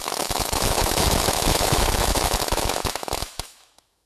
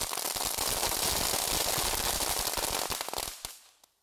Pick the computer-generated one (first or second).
first